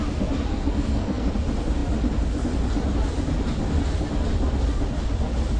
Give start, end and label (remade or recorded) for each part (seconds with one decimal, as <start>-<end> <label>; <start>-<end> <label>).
0.0-0.5 recorded; 0.5-1.3 remade; 1.3-5.6 recorded